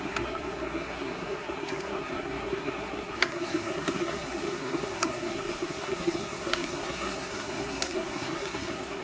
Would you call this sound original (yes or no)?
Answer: no